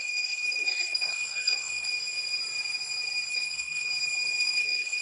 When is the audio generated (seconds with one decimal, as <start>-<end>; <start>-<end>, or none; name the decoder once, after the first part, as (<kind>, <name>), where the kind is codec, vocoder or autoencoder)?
0.0-1.9 (codec, SNAC); 3.3-3.9; 4.4-5.0